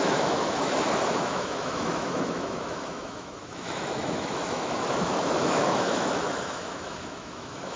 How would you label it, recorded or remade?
remade